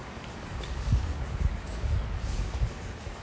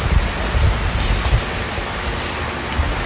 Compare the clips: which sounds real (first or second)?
second